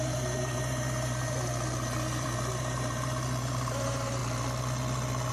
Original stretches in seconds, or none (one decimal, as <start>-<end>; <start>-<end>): 4.2-5.3